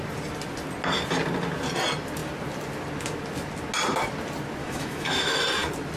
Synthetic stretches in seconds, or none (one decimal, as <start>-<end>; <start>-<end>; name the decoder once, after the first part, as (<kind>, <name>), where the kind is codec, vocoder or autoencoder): 4.6-5.4 (autoencoder, DAC-VAE)